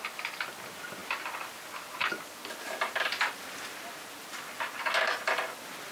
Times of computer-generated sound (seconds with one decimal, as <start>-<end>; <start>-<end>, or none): none